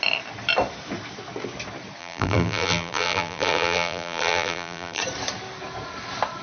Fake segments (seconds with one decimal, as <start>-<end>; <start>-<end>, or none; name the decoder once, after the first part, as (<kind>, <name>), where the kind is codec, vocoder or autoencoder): 2.0-5.0 (vocoder, BigVGAN v2)